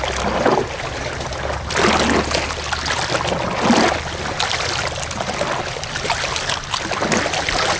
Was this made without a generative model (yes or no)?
yes